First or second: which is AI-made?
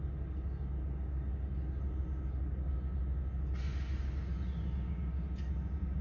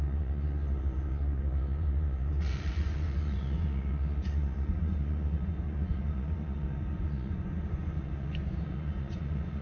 second